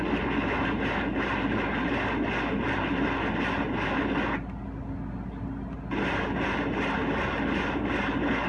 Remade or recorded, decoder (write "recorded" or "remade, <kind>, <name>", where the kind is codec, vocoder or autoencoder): recorded